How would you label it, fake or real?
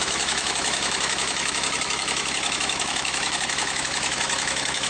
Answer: fake